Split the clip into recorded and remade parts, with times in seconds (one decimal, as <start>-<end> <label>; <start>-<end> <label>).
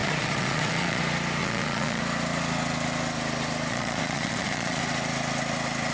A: 0.0-1.0 remade; 1.0-1.4 recorded; 1.4-2.0 remade; 2.0-3.7 recorded; 3.7-4.8 remade; 4.8-5.9 recorded